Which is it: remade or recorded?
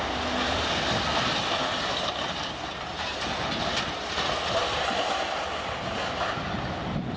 recorded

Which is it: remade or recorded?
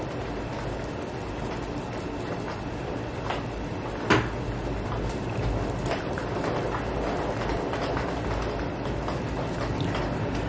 recorded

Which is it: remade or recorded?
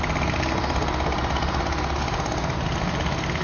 recorded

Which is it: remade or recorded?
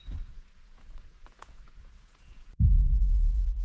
remade